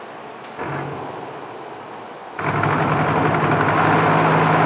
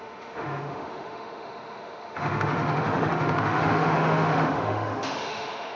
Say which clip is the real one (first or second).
first